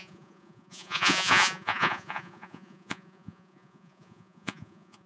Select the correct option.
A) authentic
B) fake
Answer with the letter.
B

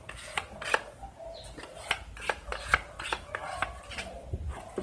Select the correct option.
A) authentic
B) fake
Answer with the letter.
A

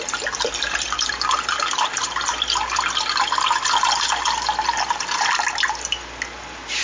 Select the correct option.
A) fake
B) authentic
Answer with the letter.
B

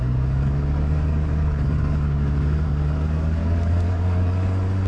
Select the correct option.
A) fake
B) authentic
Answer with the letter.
A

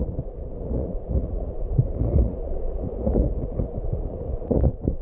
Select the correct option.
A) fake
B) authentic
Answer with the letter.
A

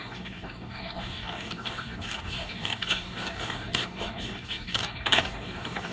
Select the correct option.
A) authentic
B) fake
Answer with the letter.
B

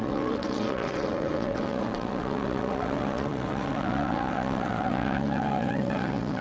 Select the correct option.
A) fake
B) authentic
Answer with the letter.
A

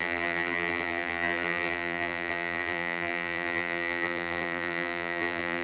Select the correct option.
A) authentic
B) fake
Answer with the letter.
B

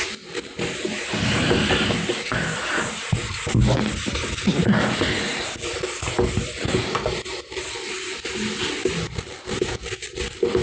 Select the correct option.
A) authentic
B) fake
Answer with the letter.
A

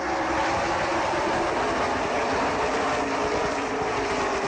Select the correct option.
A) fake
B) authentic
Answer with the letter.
B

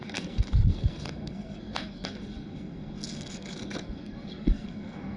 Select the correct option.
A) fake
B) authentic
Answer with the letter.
A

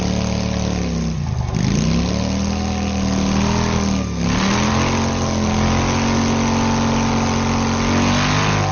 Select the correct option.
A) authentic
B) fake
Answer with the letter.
A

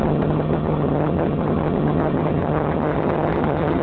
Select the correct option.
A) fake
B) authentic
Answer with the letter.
A